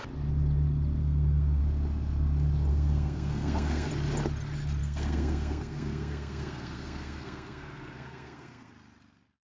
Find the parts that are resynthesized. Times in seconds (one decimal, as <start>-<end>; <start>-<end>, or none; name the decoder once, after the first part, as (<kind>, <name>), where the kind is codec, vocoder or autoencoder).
1.0-1.6 (codec, SNAC); 2.7-3.9; 4.8-8.7